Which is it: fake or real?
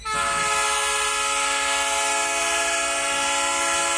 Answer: real